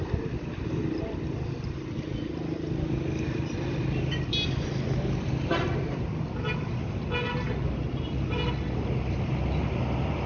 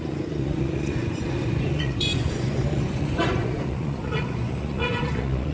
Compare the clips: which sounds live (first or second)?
first